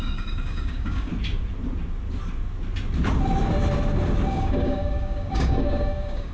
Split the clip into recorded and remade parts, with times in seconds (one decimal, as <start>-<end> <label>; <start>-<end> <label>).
0.0-1.1 remade; 1.1-4.3 recorded; 4.3-6.3 remade